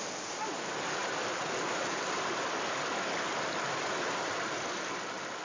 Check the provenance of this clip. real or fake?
real